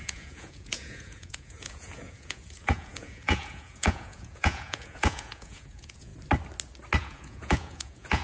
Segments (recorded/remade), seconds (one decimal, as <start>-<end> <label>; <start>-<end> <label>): 0.0-6.1 remade; 6.1-7.0 recorded; 7.0-8.2 remade